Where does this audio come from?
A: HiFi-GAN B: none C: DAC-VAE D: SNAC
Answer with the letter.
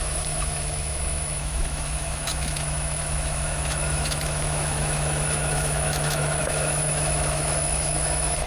C